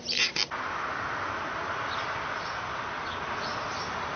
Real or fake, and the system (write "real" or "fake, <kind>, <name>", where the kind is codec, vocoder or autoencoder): real